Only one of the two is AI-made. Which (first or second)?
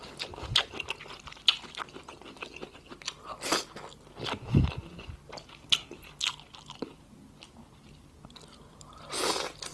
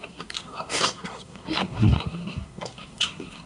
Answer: second